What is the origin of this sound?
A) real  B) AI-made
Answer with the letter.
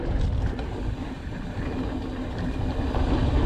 A